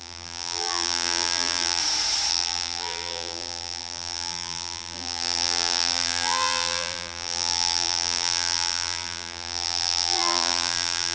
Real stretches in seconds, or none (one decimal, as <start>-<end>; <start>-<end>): 1.8-2.3